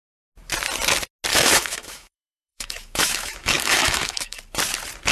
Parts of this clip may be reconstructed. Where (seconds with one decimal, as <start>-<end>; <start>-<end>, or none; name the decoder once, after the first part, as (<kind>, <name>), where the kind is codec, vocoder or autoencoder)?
1.3-4.4 (autoencoder, DAC-VAE)

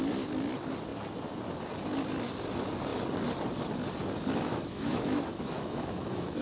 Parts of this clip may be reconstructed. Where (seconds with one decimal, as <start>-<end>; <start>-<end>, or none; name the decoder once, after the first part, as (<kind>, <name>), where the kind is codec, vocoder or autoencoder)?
4.5-6.4 (autoencoder, DAC-VAE)